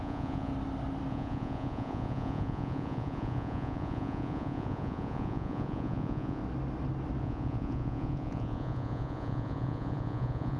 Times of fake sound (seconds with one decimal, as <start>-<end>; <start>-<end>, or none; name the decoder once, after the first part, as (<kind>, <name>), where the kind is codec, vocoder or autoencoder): 0.0-0.5 (vocoder, Vocos); 1.1-6.4; 7.2-10.6